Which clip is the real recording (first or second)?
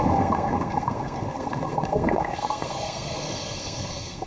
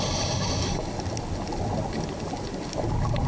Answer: second